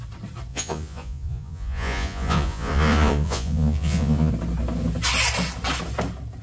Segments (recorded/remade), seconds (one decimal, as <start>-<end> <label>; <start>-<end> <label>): 0.0-0.5 recorded; 0.5-4.3 remade; 4.3-6.4 recorded